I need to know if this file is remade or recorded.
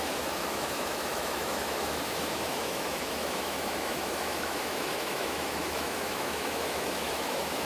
remade